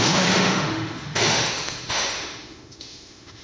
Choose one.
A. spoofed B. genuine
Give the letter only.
A